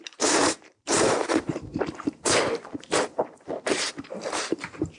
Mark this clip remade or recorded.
remade